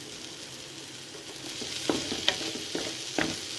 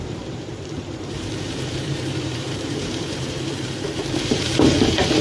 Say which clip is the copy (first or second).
second